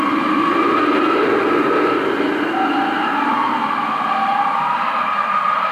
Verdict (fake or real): real